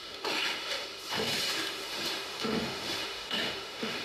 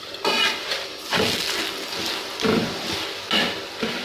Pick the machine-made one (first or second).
first